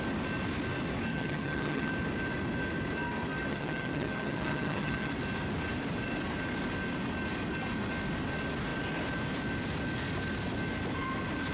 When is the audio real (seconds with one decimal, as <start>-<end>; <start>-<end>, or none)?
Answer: 0.0-1.1; 1.9-3.5; 5.1-11.5